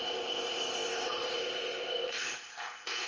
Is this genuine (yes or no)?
no